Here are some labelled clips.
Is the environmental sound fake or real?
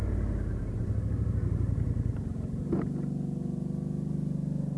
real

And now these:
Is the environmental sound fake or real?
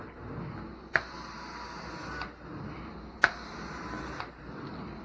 real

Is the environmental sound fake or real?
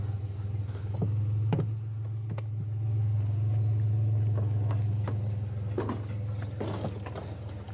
real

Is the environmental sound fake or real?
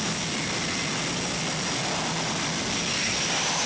real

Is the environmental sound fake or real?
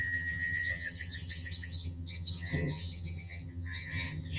fake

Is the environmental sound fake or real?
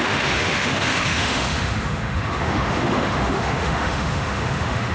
fake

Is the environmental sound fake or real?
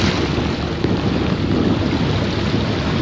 real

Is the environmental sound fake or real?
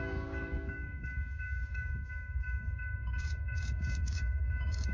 fake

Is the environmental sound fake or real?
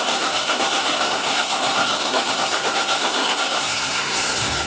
fake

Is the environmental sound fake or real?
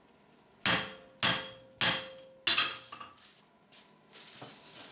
real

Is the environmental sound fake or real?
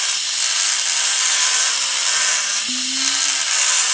real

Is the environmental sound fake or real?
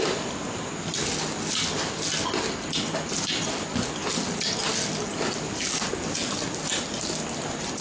real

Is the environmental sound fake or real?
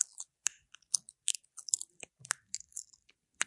real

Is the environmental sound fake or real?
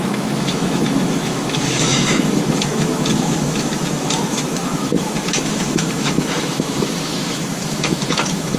fake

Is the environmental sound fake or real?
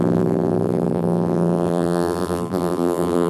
fake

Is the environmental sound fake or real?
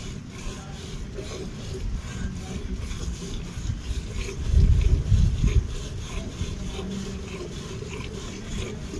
real